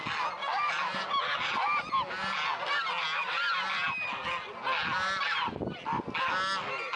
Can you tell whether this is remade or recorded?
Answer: recorded